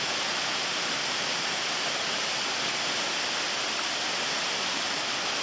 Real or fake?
real